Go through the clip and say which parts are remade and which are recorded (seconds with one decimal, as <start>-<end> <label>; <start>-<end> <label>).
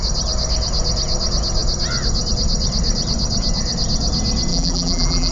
0.0-4.5 recorded; 4.5-5.3 remade